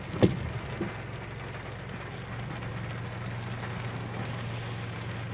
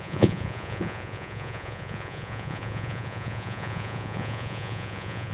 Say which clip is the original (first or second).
first